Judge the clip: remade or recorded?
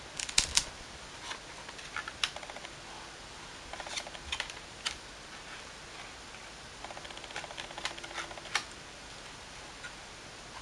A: recorded